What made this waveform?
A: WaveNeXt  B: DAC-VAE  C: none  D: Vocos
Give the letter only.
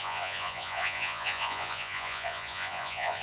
D